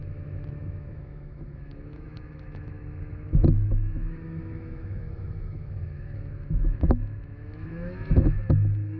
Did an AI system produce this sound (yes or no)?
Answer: yes